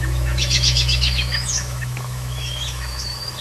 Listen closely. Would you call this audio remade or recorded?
remade